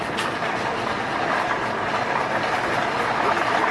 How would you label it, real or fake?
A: real